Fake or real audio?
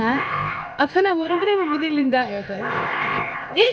fake